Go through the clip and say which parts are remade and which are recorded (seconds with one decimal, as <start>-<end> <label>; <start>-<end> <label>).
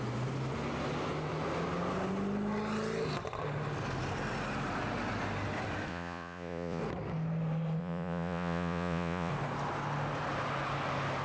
0.0-5.9 recorded; 5.9-6.8 remade; 6.8-7.8 recorded; 7.8-9.3 remade; 9.3-11.2 recorded